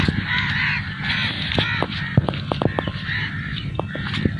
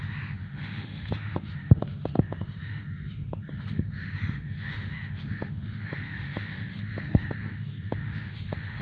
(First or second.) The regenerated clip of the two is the second